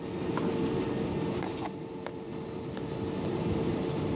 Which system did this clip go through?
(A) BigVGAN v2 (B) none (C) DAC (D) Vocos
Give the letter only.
B